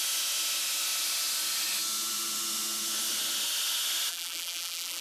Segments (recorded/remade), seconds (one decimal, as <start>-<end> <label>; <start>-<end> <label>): 0.0-4.1 recorded; 4.1-5.0 remade